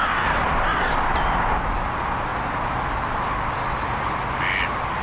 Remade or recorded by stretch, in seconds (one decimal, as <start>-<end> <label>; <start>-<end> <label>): 0.0-5.0 recorded